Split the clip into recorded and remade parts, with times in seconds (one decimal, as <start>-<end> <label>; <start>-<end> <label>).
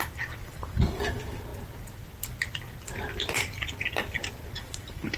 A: 0.0-4.4 recorded; 4.4-5.2 remade